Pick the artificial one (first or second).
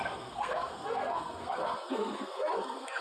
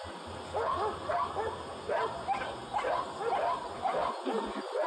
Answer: first